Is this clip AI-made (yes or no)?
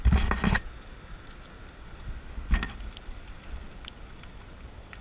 no